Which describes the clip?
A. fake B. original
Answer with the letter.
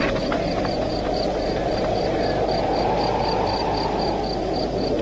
B